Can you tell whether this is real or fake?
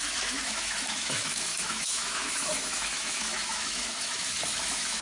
fake